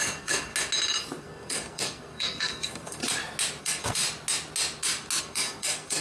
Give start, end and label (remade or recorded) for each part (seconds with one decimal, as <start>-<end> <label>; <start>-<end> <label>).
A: 0.0-0.5 remade; 0.5-1.2 recorded; 1.2-3.0 remade; 3.0-3.6 recorded; 3.6-4.0 remade; 4.0-5.2 recorded; 5.2-6.0 remade